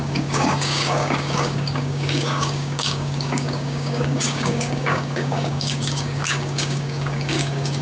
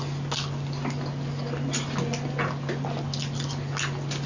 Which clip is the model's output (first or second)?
first